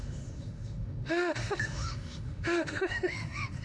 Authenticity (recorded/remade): remade